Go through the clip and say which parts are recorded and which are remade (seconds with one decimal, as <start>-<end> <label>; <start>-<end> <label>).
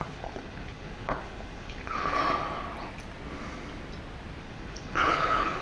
0.0-2.2 remade; 2.2-4.4 recorded; 4.4-5.6 remade